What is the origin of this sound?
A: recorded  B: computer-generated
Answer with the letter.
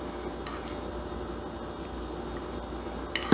A